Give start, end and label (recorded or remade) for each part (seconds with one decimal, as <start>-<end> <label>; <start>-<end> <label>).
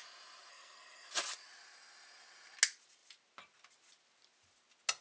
0.0-0.5 recorded; 0.5-1.1 remade; 1.1-5.0 recorded